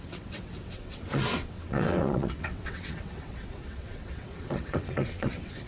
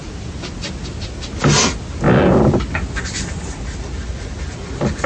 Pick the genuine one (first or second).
second